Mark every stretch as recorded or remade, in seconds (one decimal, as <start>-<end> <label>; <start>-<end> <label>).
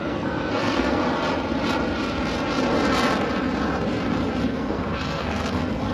0.0-1.0 remade; 1.0-4.4 recorded; 4.4-5.9 remade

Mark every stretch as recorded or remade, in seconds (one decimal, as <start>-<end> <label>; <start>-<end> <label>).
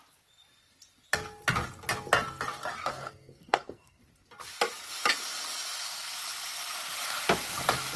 0.0-2.8 recorded; 2.8-4.0 remade; 4.0-8.0 recorded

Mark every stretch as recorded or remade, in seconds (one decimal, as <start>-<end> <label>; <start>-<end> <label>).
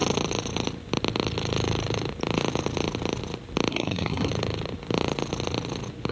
0.0-3.7 recorded; 3.7-4.3 remade; 4.3-6.1 recorded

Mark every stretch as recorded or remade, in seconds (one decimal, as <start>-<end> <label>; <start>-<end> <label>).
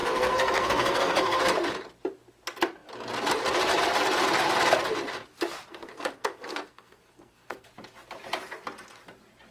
0.0-1.4 remade; 1.4-5.7 recorded; 5.7-7.7 remade; 7.7-9.5 recorded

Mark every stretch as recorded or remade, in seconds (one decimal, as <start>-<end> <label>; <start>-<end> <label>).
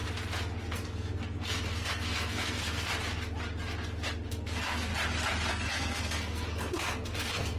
0.0-0.6 recorded; 0.6-2.9 remade; 2.9-4.3 recorded; 4.3-4.9 remade; 4.9-5.5 recorded; 5.5-7.6 remade